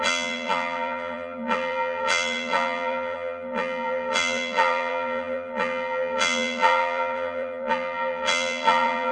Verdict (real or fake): fake